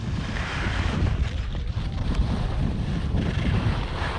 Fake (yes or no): no